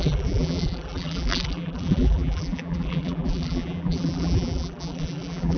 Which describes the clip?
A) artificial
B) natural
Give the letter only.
A